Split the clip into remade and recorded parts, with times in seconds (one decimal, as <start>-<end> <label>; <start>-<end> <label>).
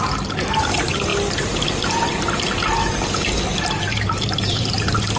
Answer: 0.0-3.9 recorded; 3.9-4.7 remade; 4.7-5.2 recorded